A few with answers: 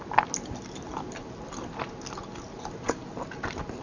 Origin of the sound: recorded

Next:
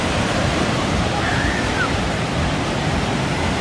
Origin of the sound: remade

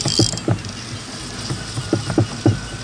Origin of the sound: recorded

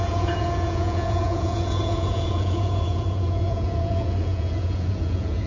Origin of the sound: remade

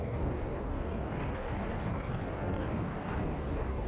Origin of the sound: remade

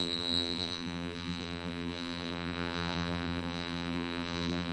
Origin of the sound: remade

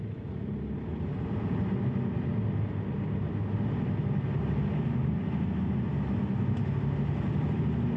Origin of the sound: recorded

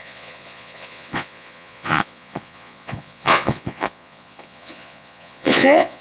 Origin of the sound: remade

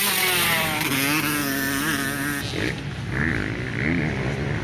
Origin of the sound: recorded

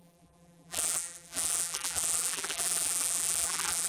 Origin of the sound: remade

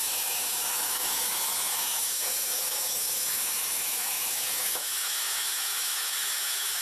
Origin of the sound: remade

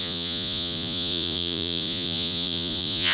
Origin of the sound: remade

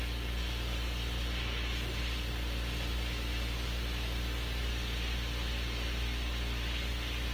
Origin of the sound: recorded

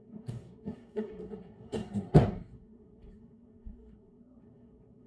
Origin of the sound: remade